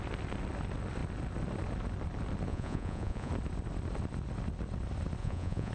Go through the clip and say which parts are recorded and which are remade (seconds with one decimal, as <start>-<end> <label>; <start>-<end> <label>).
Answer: 0.0-2.5 recorded; 2.5-3.3 remade; 3.3-5.2 recorded; 5.2-5.7 remade